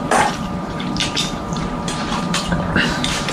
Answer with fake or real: fake